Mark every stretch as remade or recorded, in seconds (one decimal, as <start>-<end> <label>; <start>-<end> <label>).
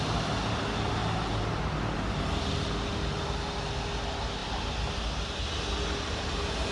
0.0-6.7 recorded